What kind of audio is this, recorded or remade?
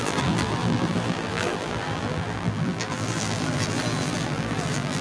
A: remade